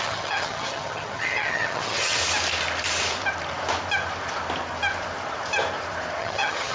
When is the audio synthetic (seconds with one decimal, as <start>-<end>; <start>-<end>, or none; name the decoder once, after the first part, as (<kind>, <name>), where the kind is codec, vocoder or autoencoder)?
0.0-2.2 (vocoder, HiFi-GAN); 6.2-6.7